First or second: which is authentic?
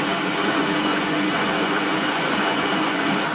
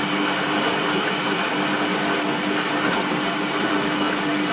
second